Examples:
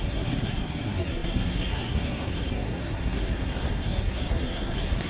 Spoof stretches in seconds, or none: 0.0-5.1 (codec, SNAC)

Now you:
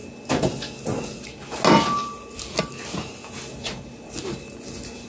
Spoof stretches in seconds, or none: none